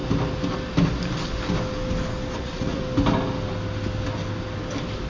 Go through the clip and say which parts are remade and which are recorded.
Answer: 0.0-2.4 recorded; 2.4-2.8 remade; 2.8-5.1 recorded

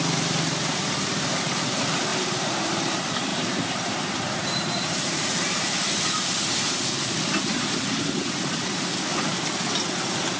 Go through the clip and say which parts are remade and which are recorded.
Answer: 0.0-2.1 recorded; 2.1-2.7 remade; 2.7-3.3 recorded; 3.3-5.8 remade; 5.8-10.4 recorded

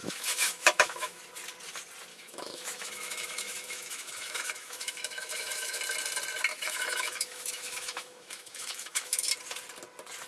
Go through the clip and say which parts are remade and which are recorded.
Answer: 0.0-1.2 remade; 1.2-2.1 recorded; 2.1-5.8 remade; 5.8-6.5 recorded; 6.5-9.3 remade; 9.3-10.3 recorded

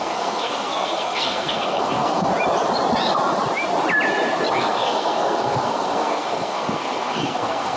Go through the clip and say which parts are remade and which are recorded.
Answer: 0.0-2.3 remade; 2.3-4.5 recorded; 4.5-7.8 remade

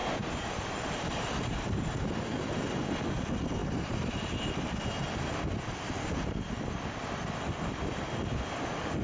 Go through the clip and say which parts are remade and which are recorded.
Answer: 0.0-0.9 remade; 0.9-3.6 recorded; 3.6-4.6 remade; 4.6-9.0 recorded